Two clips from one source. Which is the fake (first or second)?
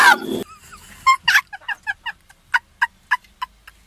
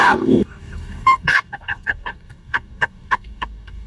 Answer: second